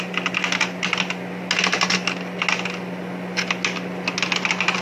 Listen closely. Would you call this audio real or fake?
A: real